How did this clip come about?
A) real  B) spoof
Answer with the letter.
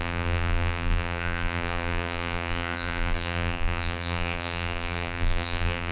B